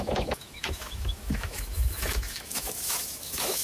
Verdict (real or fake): fake